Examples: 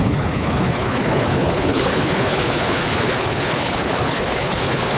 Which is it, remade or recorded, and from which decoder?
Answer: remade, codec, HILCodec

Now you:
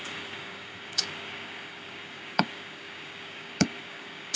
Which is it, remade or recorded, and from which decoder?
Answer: remade, codec, DAC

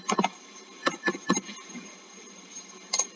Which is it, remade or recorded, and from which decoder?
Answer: recorded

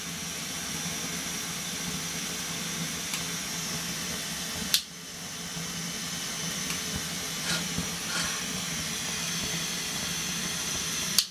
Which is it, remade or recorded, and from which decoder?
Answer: recorded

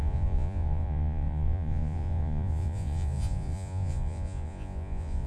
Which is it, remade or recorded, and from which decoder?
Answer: remade, vocoder, Vocos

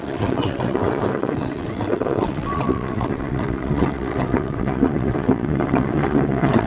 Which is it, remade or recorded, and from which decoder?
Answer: remade, vocoder, WaveNeXt